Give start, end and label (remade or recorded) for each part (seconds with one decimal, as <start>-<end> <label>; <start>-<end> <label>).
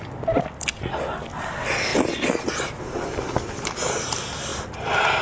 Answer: 0.0-5.2 recorded